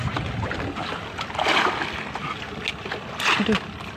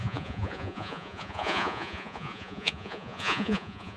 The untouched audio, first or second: first